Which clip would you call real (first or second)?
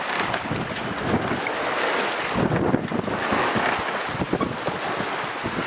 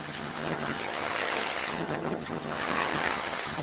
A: first